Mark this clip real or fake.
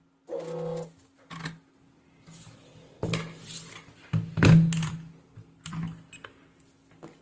real